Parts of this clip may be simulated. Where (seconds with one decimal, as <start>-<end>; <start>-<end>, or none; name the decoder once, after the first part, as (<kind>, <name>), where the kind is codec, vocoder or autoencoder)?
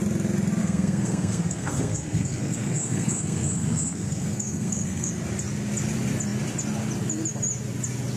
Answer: 0.6-5.1 (codec, SNAC)